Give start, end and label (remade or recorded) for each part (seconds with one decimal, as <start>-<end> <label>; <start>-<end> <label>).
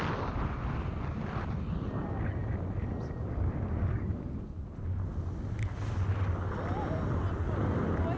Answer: 0.0-8.2 recorded